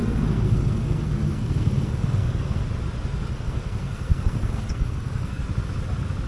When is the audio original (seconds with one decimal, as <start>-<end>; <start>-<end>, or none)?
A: 2.6-3.3; 5.4-6.3